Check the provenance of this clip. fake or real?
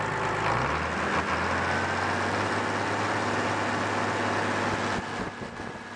real